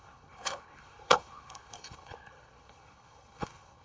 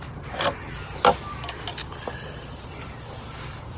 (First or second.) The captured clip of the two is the second